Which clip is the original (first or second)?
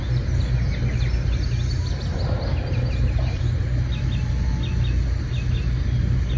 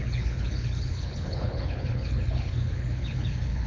first